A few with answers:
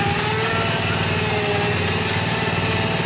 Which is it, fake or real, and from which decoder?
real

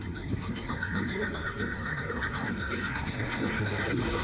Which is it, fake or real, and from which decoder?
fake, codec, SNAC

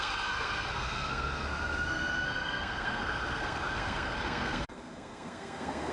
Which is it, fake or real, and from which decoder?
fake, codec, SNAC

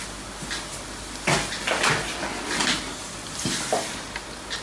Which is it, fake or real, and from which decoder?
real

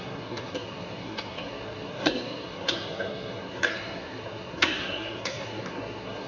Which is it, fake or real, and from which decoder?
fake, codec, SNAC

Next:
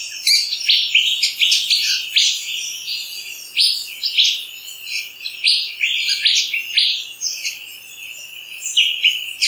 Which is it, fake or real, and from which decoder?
real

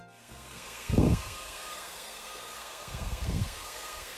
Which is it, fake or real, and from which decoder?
fake, codec, SNAC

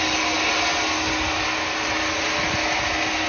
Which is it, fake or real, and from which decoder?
real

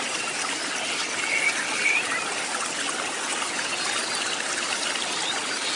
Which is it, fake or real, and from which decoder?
real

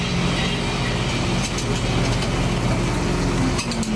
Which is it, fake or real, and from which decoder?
real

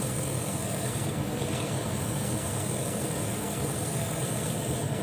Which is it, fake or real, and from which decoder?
fake, codec, SNAC